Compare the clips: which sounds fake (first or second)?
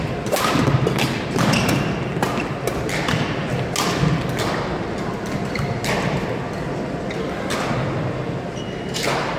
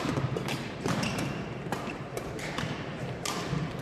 second